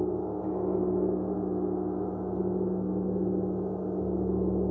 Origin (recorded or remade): recorded